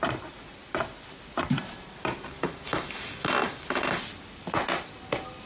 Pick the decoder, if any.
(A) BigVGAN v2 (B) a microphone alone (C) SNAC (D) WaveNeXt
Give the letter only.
B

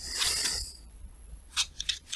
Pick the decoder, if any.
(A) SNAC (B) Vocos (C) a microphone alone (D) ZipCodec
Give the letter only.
B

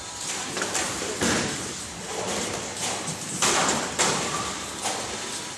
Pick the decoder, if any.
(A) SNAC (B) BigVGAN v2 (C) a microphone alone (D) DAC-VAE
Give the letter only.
B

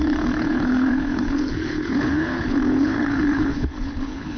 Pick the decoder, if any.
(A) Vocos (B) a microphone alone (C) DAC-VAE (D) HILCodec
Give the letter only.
D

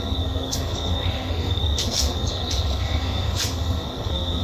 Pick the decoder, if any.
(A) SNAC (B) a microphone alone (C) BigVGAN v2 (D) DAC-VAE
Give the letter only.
A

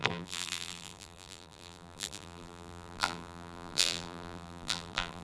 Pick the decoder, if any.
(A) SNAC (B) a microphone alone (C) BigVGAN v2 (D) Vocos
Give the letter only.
C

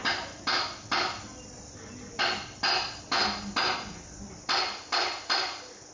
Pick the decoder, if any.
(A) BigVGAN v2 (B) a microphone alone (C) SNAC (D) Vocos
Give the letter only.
B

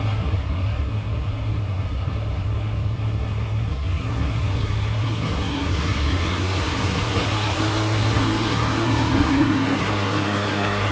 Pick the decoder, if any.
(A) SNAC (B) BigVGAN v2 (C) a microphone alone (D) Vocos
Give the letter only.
A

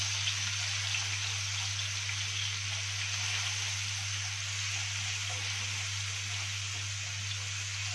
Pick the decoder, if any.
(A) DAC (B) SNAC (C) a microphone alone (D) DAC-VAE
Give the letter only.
C